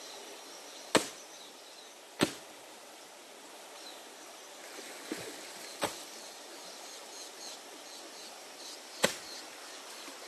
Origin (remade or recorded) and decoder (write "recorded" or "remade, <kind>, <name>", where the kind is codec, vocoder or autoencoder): recorded